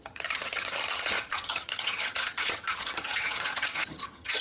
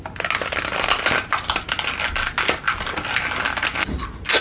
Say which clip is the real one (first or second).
second